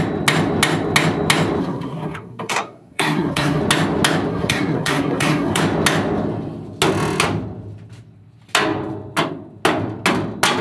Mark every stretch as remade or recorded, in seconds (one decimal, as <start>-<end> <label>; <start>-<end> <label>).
0.0-1.6 recorded; 1.6-3.6 remade; 3.6-4.3 recorded; 4.3-5.6 remade; 5.6-10.6 recorded